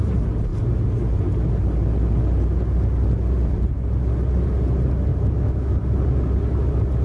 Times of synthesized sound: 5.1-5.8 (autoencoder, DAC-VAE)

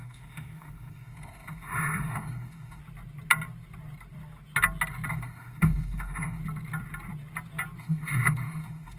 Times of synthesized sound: 0.0-2.8 (autoencoder, DAC-VAE); 5.1-6.4; 7.8-9.0

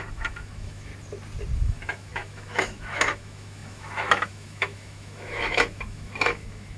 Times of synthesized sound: 0.0-0.9 (autoencoder, DAC-VAE); 1.6-6.8

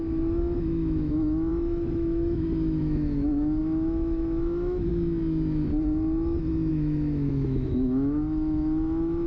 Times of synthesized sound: 0.0-4.9 (autoencoder, DAC-VAE); 6.7-9.3

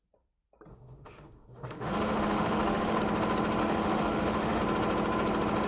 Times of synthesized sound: 0.7-3.0 (autoencoder, DAC-VAE); 3.6-4.6

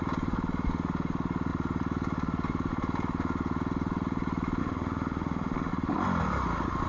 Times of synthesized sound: 4.6-5.7 (autoencoder, DAC-VAE)